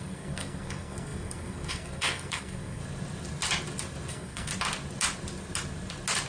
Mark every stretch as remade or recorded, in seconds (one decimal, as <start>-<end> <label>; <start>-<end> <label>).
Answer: 0.0-2.8 remade; 2.8-4.1 recorded; 4.1-4.5 remade; 4.5-6.3 recorded